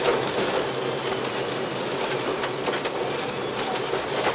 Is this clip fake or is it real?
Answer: real